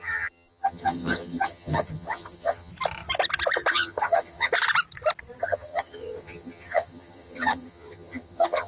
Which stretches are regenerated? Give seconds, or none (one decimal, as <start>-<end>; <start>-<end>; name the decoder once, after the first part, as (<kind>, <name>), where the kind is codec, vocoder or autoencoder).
0.0-2.7 (vocoder, HiFi-GAN); 3.7-4.5; 5.4-8.7